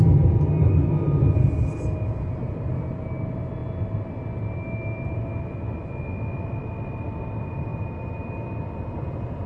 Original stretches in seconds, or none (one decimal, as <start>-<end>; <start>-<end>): 0.0-9.5